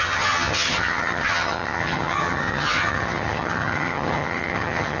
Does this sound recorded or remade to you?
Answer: remade